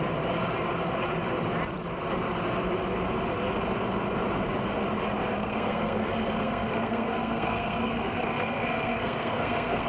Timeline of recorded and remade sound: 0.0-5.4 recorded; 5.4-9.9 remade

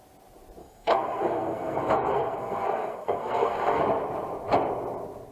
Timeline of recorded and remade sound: 0.0-0.6 recorded; 0.6-3.8 remade; 3.8-5.3 recorded

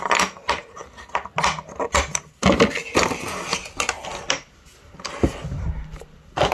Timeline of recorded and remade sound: 0.0-6.5 recorded

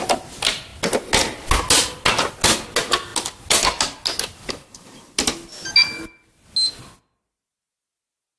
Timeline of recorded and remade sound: 0.0-8.4 recorded